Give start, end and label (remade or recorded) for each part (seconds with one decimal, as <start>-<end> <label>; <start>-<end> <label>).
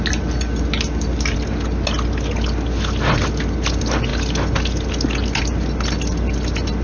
0.0-6.8 recorded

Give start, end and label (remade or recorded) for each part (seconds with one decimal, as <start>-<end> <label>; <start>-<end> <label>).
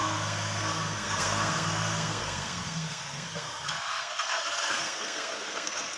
0.0-6.0 remade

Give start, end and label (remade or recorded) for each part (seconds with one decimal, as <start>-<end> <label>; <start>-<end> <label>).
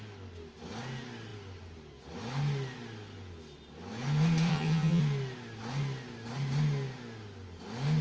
0.0-4.5 recorded; 4.5-5.0 remade; 5.0-8.0 recorded